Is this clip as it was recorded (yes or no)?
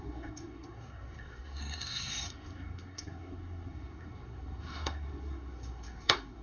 no